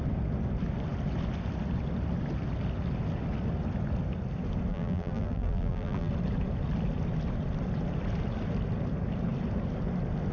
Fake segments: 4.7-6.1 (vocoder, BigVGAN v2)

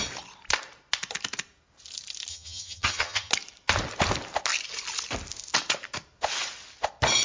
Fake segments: 2.3-3.3 (vocoder, HiFi-GAN)

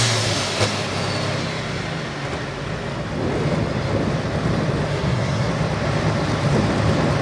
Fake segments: 4.9-5.5 (codec, SNAC)